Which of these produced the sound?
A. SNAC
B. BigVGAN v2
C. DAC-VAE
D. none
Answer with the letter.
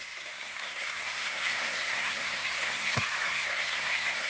A